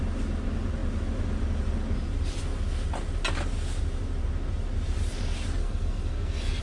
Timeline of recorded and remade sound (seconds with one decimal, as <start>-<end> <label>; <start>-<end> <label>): 0.0-5.6 recorded; 5.6-6.6 remade